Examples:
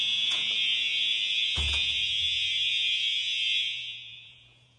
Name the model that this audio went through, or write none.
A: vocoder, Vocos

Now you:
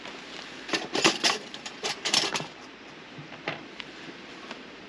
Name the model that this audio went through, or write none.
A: vocoder, BigVGAN v2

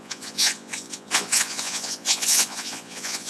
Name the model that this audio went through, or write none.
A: vocoder, Vocos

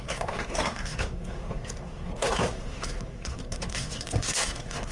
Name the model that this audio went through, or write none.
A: codec, SNAC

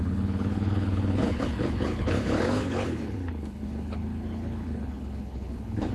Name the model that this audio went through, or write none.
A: codec, HILCodec